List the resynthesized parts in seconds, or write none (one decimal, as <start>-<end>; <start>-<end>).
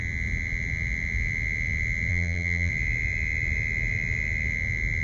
2.1-2.7